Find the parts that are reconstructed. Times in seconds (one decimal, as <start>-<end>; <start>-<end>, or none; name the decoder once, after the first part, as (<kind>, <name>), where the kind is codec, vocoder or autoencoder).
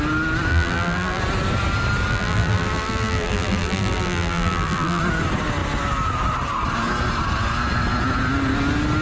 0.5-1.2 (vocoder, BigVGAN v2); 2.1-5.0